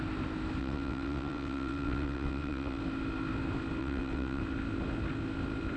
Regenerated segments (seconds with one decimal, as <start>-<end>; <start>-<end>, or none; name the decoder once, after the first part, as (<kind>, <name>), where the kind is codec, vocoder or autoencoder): 0.6-2.8 (vocoder, WaveNeXt); 3.8-4.4